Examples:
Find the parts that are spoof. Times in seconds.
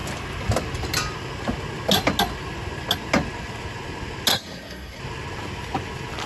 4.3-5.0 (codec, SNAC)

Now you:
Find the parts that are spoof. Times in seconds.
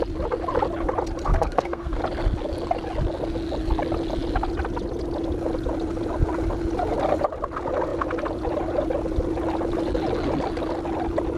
1.3-2.0 (codec, SNAC)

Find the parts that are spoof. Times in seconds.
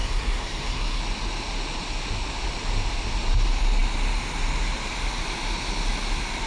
0.0-1.0 (codec, SNAC)